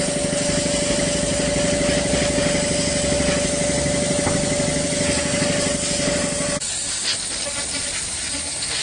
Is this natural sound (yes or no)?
yes